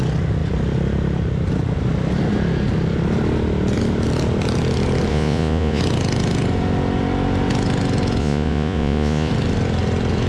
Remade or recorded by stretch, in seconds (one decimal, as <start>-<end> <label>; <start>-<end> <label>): 0.0-5.1 recorded; 5.1-5.8 remade; 5.8-8.2 recorded; 8.2-9.3 remade; 9.3-10.3 recorded